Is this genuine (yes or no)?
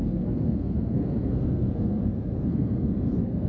no